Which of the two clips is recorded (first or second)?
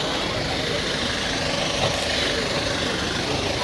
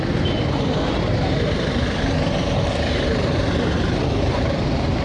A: first